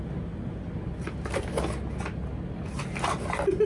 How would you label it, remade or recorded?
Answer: recorded